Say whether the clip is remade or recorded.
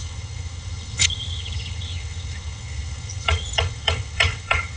remade